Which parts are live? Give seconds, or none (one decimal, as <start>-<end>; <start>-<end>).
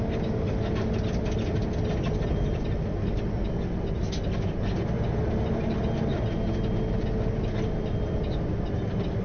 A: 0.0-9.2